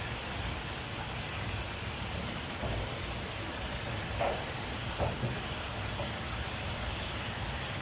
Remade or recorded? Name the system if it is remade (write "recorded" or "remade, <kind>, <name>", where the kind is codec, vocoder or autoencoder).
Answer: remade, vocoder, BigVGAN v2